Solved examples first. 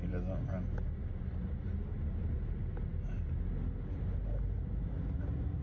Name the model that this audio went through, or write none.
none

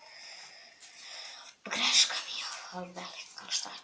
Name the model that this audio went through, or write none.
none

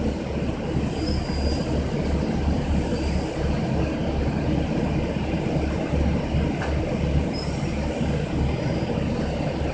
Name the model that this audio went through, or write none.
none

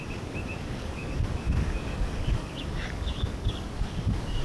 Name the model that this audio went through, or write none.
codec, DAC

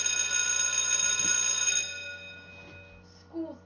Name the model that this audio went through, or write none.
none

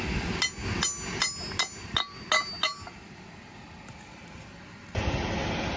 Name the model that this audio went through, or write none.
none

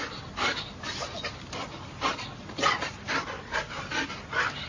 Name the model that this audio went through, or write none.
none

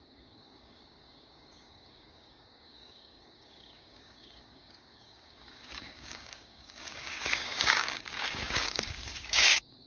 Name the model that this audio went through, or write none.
codec, DAC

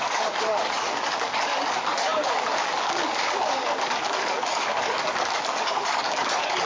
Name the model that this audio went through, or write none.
codec, DAC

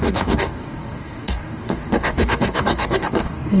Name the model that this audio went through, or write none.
codec, DAC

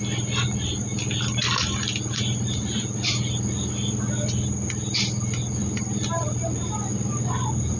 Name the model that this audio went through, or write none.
none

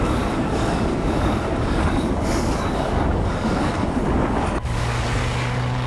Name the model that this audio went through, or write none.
codec, DAC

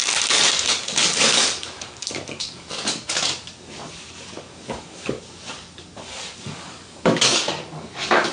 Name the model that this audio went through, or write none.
codec, DAC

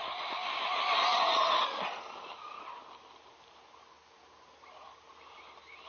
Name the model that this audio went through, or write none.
none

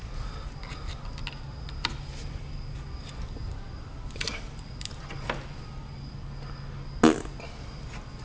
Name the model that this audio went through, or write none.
none